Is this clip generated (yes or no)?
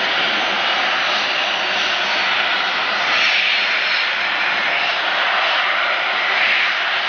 no